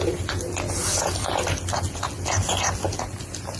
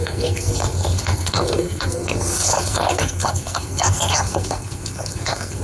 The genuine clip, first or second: first